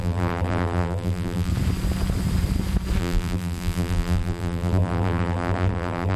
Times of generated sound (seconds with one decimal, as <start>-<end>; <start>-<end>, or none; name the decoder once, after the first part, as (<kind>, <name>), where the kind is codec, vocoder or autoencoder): 0.0-1.5 (vocoder, BigVGAN v2); 3.0-6.2